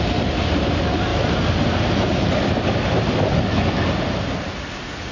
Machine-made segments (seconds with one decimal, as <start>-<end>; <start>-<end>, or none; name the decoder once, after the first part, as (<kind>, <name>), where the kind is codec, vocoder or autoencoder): none